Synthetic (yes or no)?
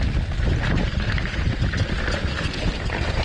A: no